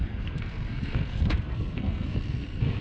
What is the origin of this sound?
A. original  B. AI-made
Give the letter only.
B